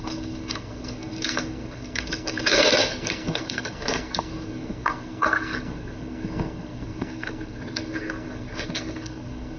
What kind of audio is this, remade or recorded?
remade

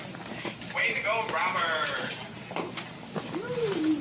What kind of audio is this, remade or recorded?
remade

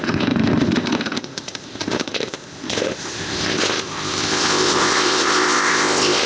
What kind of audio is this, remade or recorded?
remade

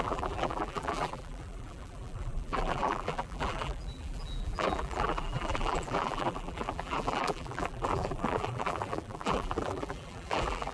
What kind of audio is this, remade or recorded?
remade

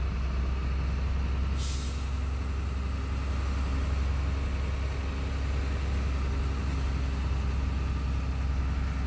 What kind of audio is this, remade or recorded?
recorded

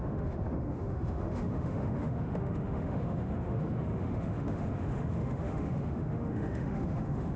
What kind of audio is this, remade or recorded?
remade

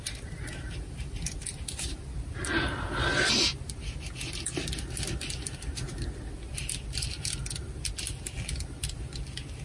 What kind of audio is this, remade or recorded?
recorded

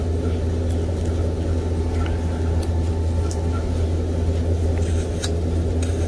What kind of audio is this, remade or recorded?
recorded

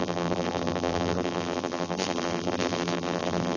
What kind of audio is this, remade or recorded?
remade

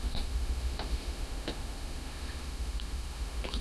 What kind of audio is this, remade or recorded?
remade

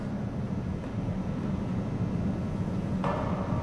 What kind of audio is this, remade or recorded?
recorded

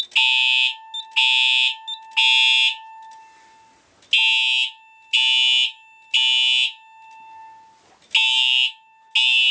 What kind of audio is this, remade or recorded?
recorded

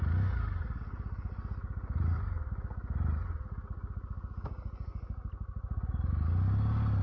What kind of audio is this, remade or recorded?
recorded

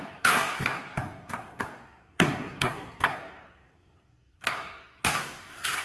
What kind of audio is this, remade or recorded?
remade